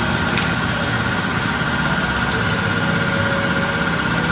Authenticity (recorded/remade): recorded